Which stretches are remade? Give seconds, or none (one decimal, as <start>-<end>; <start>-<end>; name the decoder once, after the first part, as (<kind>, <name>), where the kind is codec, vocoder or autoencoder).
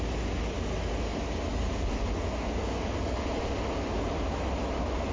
none